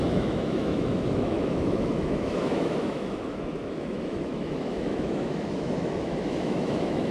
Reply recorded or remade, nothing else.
remade